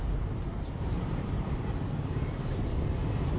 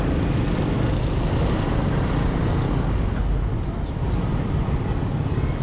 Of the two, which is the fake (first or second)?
first